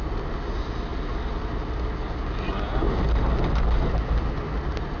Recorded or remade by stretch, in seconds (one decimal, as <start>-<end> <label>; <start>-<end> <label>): 0.0-5.0 recorded